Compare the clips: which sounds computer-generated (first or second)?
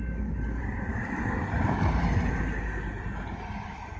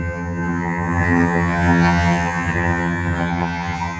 second